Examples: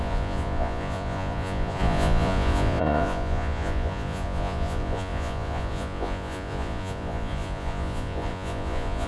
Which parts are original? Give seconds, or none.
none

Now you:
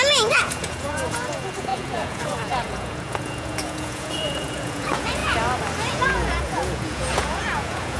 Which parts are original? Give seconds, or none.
5.2-5.9